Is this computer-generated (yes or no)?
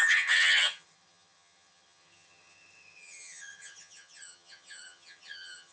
yes